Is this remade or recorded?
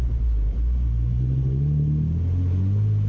recorded